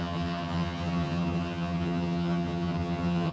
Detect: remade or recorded remade